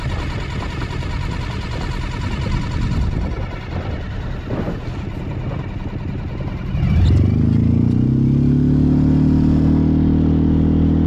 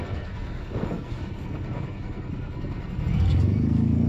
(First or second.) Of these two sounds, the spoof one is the second